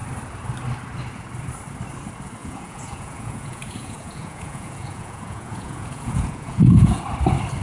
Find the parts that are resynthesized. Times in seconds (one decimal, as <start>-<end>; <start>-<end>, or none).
2.4-7.0